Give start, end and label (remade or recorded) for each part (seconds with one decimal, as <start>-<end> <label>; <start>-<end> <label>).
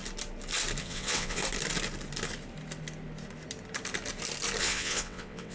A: 0.0-0.8 recorded; 0.8-1.4 remade; 1.4-4.6 recorded; 4.6-5.5 remade